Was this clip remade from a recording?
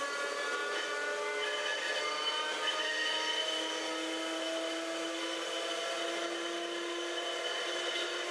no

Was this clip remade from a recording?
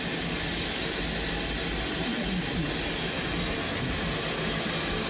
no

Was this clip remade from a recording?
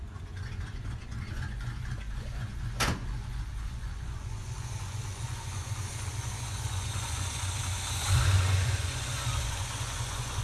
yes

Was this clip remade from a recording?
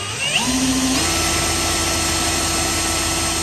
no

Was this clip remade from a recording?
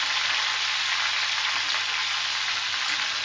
no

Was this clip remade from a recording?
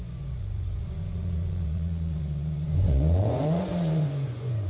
yes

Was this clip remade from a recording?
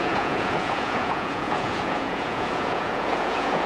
yes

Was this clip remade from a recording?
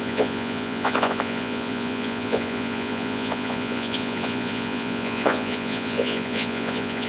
yes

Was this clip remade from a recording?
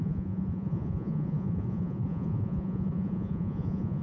yes